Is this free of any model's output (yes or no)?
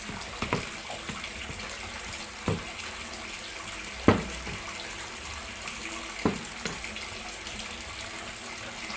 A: yes